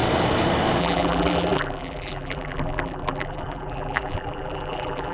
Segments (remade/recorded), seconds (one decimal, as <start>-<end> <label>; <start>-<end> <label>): 0.0-0.8 recorded; 0.8-5.1 remade